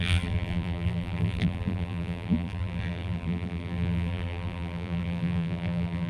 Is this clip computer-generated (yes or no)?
yes